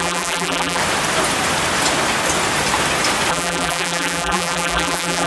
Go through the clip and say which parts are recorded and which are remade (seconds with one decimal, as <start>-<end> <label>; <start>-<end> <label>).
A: 0.0-0.8 remade; 0.8-3.3 recorded; 3.3-5.3 remade